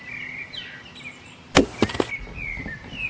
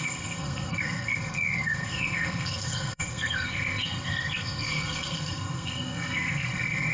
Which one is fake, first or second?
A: second